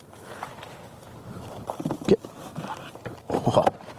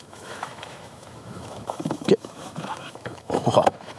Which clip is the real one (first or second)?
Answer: first